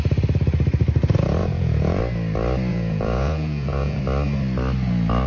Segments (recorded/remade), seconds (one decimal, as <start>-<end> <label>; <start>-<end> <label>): 0.0-1.4 recorded; 1.4-2.0 remade; 2.0-2.7 recorded; 2.7-4.0 remade; 4.0-5.3 recorded